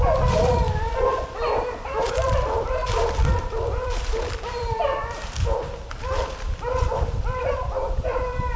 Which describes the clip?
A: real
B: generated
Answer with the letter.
B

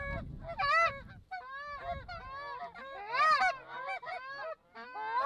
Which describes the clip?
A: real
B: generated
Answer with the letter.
A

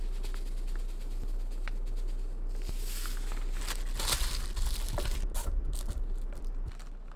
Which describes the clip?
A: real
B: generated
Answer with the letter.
A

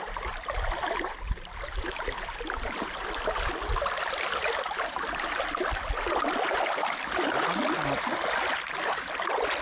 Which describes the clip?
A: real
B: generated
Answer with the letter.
A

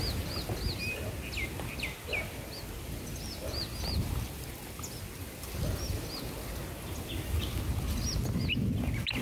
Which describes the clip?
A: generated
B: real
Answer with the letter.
B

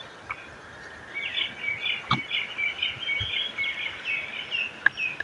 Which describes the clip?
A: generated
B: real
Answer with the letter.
B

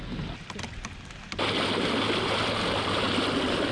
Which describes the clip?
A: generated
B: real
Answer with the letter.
B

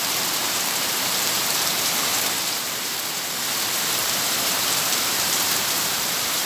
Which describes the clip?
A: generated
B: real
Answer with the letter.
A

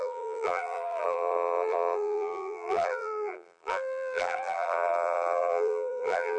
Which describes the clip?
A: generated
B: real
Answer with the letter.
A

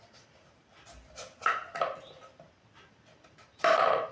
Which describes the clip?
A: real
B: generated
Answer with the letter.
B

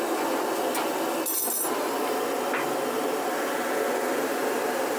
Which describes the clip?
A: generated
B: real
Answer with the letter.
B